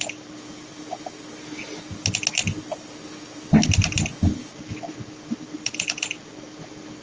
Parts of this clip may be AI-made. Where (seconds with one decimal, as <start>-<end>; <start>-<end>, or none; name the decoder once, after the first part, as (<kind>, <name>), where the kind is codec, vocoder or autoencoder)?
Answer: none